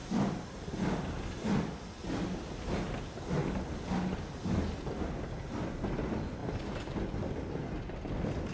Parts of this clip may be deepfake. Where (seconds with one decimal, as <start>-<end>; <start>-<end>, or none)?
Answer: none